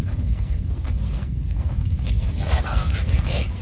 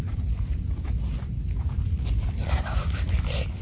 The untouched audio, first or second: second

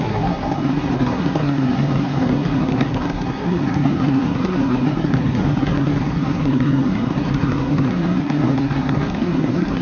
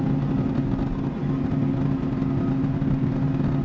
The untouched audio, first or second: second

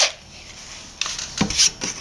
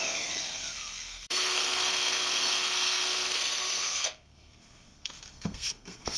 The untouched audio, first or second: first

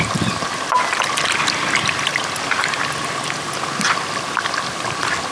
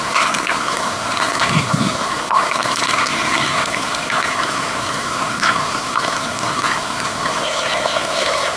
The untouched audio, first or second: first